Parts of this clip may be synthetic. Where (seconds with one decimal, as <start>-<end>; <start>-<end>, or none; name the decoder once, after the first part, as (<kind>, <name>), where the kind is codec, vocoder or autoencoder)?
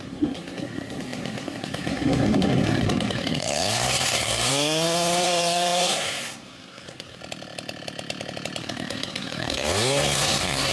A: 0.0-7.2 (codec, SNAC); 8.6-10.7